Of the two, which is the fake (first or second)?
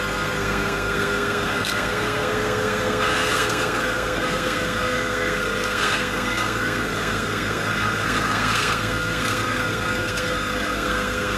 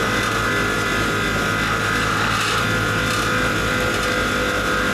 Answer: first